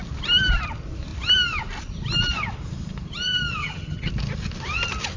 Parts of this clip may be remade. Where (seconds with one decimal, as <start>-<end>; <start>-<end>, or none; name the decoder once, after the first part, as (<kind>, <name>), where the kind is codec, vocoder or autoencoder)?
3.6-4.1 (vocoder, HiFi-GAN)